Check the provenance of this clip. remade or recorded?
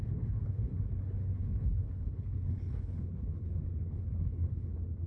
remade